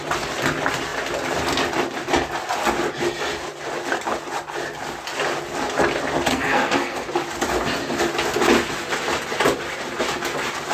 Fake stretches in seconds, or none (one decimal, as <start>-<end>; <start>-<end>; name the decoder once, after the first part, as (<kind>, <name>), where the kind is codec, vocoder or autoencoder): 6.3-7.1 (codec, SNAC)